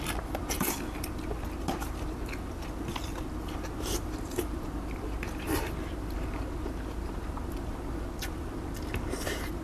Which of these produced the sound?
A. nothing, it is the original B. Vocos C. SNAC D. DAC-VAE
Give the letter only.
A